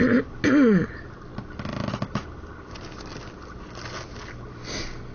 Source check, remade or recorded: recorded